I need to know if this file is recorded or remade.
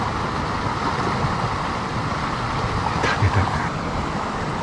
recorded